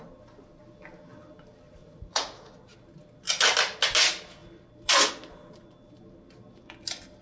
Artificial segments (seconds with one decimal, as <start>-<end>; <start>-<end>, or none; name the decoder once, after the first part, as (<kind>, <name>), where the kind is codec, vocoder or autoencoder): 1.8-2.5 (vocoder, Vocos)